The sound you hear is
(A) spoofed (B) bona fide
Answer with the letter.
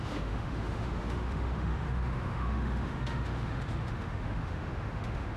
A